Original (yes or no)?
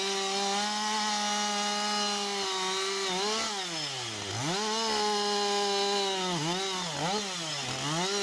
yes